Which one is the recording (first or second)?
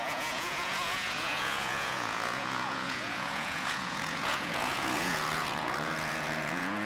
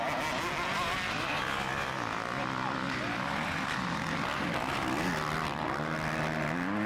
second